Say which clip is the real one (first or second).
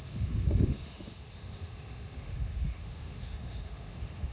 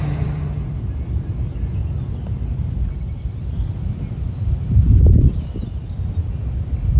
second